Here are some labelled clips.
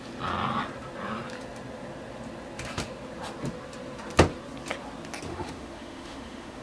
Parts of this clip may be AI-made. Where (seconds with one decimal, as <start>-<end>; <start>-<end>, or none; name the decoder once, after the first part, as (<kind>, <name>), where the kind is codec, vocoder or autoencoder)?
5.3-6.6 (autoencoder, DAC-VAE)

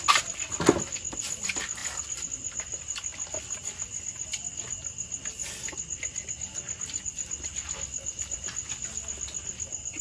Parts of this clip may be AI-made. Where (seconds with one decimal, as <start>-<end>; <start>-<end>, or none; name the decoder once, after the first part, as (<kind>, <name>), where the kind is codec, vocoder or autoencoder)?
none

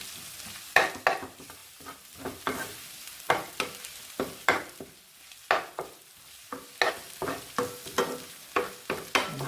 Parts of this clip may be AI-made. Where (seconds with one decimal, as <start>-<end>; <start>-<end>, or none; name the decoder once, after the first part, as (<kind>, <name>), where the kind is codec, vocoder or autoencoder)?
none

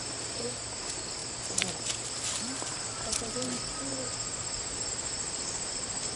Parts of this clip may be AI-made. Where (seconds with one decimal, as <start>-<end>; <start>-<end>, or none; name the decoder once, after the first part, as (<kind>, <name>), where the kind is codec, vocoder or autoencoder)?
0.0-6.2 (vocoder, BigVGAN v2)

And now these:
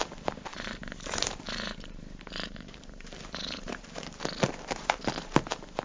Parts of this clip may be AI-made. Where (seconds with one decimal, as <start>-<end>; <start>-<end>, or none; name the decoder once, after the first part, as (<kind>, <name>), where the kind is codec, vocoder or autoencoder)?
0.5-4.0 (vocoder, BigVGAN v2)

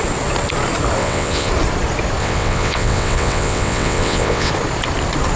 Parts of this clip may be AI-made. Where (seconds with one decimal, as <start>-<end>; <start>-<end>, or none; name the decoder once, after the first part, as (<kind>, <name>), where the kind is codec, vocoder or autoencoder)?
1.0-1.5 (vocoder, WaveNeXt); 2.2-4.5